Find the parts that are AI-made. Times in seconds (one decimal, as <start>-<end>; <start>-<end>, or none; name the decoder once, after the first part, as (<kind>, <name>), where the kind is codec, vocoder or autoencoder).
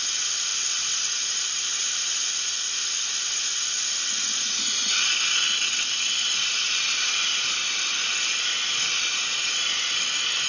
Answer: 0.5-2.2 (vocoder, BigVGAN v2); 4.4-4.9; 5.9-8.1